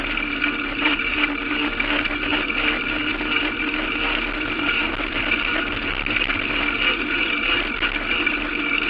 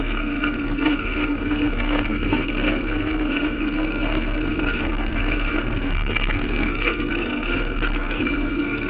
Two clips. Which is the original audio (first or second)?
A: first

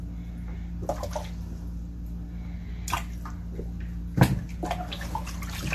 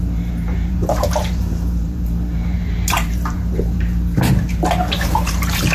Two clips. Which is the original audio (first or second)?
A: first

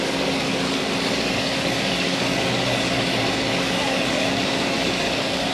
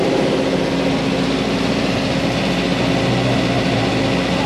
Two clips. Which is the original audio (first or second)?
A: second